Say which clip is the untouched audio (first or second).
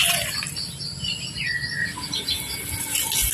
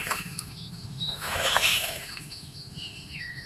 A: first